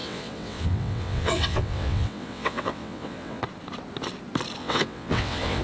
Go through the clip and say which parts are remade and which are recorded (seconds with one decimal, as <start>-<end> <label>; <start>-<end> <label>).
0.0-3.4 remade; 3.4-4.6 recorded; 4.6-5.6 remade